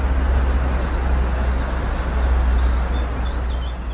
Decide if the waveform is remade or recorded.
recorded